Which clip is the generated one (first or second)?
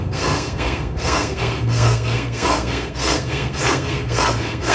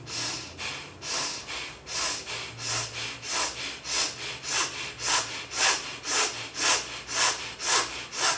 first